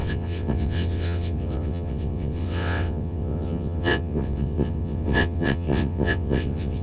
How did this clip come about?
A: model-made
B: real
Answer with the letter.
A